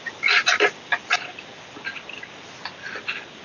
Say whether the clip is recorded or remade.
recorded